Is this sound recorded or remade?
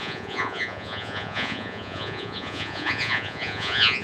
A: remade